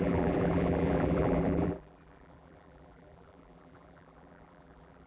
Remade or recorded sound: remade